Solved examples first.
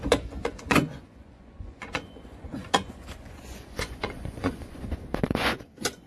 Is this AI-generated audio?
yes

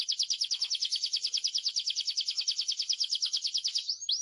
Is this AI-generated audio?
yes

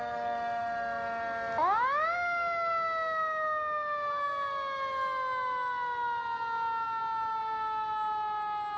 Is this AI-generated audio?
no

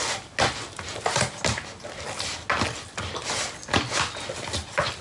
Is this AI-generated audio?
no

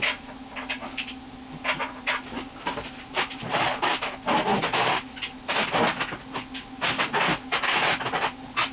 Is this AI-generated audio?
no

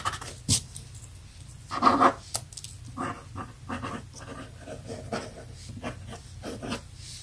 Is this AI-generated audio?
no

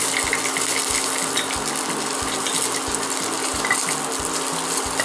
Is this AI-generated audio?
no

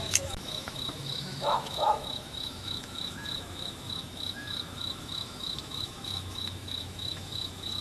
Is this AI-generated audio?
yes